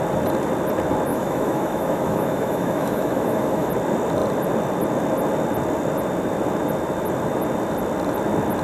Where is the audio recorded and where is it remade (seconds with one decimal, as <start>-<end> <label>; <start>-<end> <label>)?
0.0-1.1 recorded; 1.1-3.7 remade; 3.7-8.6 recorded